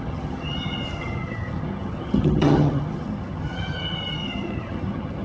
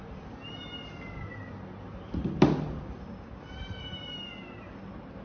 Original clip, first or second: second